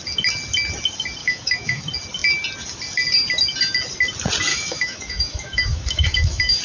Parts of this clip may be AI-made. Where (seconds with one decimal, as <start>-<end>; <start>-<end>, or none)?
1.2-1.8; 4.5-6.6